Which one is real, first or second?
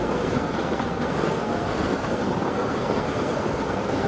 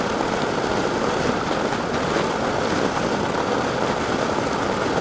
second